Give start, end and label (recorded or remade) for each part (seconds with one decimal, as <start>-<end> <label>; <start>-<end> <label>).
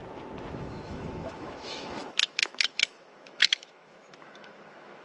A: 0.0-0.6 recorded; 0.6-5.0 remade